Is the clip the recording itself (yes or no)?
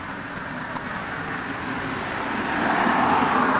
yes